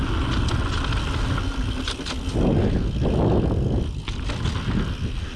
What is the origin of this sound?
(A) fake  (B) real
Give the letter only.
B